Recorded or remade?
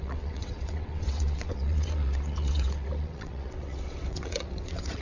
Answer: remade